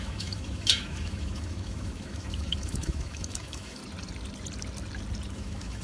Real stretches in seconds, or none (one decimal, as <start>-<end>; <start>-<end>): 3.8-5.3

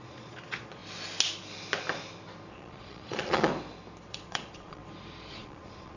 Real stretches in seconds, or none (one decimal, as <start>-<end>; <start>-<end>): 0.8-2.5; 3.5-4.1; 4.8-5.3

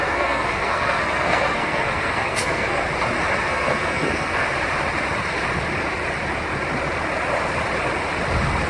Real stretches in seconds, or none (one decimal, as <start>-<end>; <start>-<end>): 2.8-3.4; 4.4-8.7

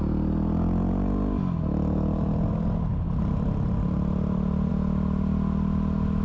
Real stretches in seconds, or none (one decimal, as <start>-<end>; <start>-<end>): 0.0-6.2

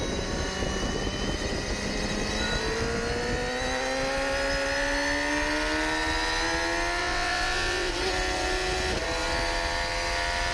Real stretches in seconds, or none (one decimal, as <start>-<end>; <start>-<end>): 0.0-7.0; 7.9-10.5